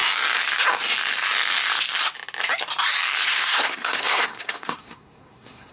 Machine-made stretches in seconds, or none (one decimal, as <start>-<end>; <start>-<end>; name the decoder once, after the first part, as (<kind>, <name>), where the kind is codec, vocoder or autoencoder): 3.3-5.7 (codec, SNAC)